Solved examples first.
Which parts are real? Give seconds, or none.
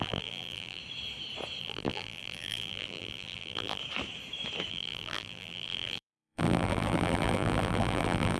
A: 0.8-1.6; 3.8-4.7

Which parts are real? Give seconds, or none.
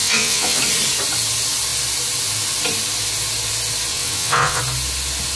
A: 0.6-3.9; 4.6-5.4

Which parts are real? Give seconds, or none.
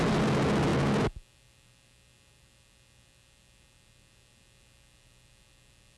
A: 0.0-6.0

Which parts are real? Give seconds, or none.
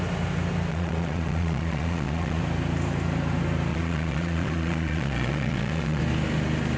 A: 0.0-0.7; 2.4-3.7; 6.0-6.8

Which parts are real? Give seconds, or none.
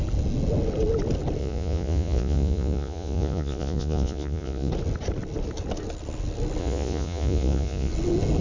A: 0.0-1.4; 4.7-6.6; 7.9-8.4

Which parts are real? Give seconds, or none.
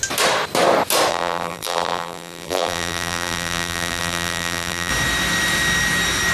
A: 0.0-1.1; 4.9-6.3